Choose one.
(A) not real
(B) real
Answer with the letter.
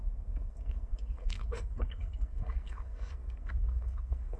A